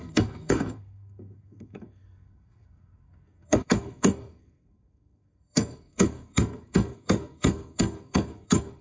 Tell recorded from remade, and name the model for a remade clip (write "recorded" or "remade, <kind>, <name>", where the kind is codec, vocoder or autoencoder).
remade, codec, SNAC